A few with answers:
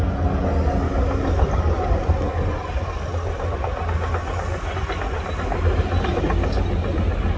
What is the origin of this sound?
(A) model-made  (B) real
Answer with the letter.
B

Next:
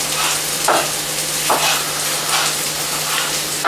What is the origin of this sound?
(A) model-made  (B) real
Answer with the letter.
B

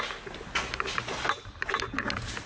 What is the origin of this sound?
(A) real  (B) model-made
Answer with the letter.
A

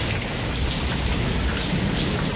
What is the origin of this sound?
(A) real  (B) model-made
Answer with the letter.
A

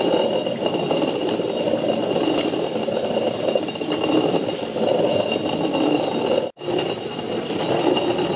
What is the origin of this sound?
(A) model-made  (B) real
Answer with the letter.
B